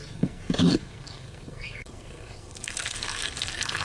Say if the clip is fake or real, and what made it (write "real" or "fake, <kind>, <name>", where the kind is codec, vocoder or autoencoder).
fake, codec, SNAC